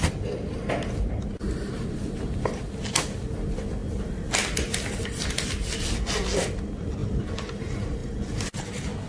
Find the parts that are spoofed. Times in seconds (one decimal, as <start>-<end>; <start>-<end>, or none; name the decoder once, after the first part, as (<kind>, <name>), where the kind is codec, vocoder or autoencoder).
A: none